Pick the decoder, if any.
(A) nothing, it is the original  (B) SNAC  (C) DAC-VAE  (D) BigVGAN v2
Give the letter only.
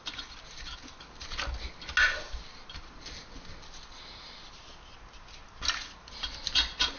A